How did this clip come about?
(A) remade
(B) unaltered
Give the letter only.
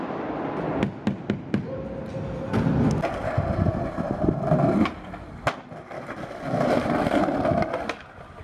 B